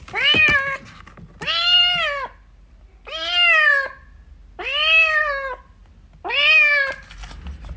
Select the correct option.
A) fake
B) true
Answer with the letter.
B